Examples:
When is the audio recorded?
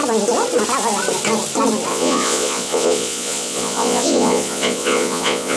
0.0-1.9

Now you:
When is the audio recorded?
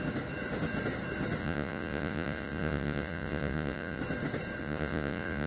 0.0-1.4; 4.0-4.6